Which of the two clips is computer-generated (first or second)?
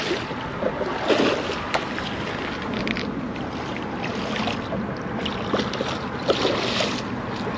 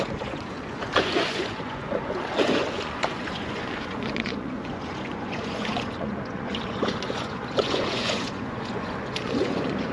second